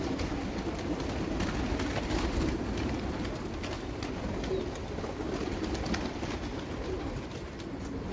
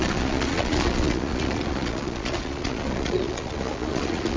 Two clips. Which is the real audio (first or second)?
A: first